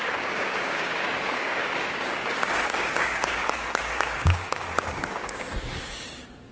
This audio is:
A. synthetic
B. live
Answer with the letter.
A